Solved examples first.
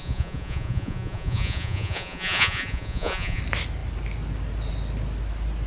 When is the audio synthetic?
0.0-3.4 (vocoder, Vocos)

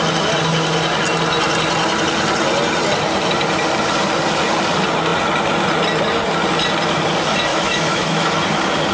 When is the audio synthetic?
7.5-8.3 (autoencoder, DAC-VAE)

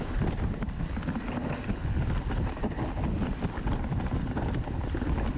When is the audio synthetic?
none

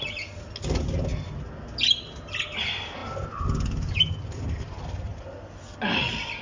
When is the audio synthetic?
none

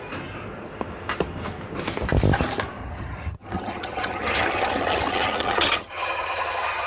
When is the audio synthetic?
2.8-6.9 (vocoder, HiFi-GAN)

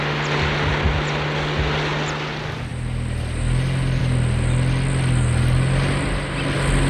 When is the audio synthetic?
none

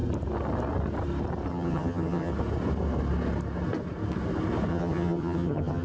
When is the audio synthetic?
1.5-2.3 (vocoder, HiFi-GAN); 4.7-5.8

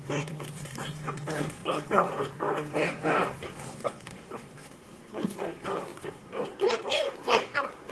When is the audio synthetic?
0.0-7.9 (codec, SNAC)